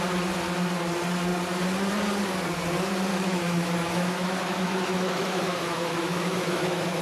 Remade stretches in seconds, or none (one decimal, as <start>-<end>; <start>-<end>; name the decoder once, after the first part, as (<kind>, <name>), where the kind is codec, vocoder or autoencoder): 3.1-7.0 (autoencoder, DAC-VAE)